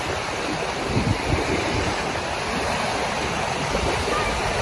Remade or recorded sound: recorded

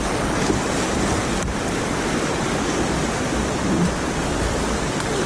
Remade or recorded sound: recorded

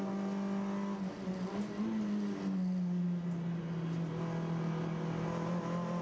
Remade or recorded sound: recorded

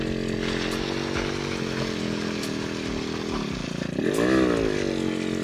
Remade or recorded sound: recorded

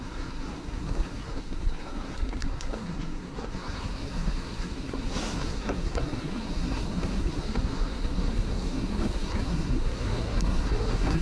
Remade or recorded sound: remade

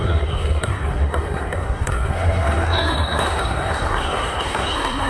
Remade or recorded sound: remade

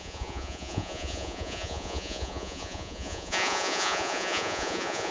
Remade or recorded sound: remade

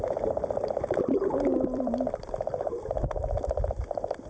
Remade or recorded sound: remade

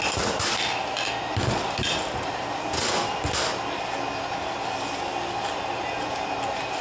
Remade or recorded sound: recorded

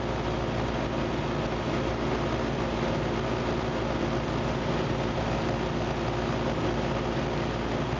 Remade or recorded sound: recorded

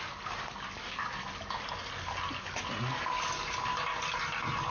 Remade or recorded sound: recorded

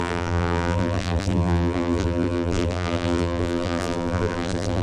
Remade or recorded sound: remade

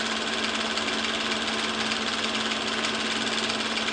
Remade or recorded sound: recorded